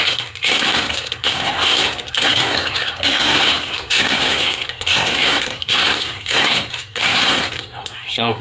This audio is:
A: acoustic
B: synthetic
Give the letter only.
B